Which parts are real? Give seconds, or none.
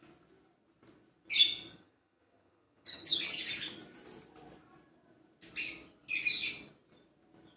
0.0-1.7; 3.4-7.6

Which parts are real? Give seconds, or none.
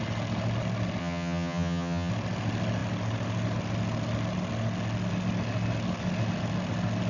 0.0-1.0; 2.1-7.1